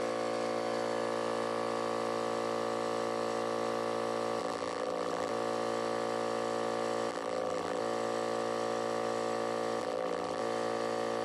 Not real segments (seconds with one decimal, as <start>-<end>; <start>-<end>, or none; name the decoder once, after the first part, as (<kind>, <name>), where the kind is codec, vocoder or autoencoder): 4.4-5.3 (vocoder, BigVGAN v2); 7.1-7.8; 9.8-10.4